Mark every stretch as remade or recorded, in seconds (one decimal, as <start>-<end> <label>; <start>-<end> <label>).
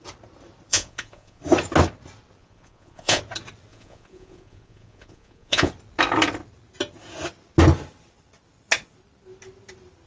0.0-0.7 recorded; 0.7-1.4 remade; 1.4-2.4 recorded; 2.4-3.2 remade; 3.2-3.7 recorded; 3.7-5.7 remade; 5.7-10.1 recorded